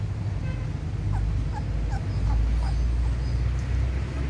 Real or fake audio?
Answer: real